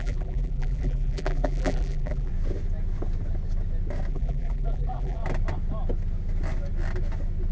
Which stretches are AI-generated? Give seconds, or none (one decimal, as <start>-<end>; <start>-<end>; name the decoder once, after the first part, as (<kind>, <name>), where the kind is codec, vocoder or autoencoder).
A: 0.0-2.3 (vocoder, BigVGAN v2); 4.1-5.2